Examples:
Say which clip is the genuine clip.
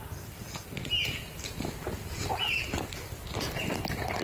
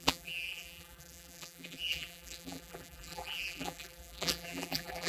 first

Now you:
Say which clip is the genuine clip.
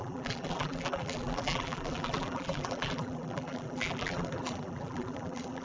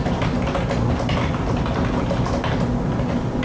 second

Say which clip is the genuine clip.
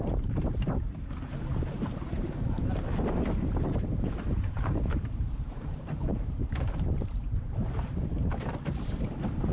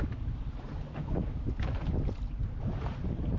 second